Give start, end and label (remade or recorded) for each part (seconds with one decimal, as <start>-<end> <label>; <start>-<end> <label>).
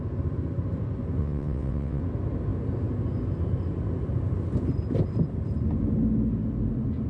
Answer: 0.0-1.2 recorded; 1.2-2.0 remade; 2.0-7.1 recorded